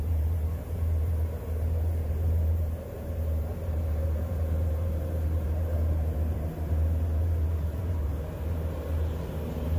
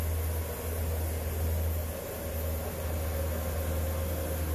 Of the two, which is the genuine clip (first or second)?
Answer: second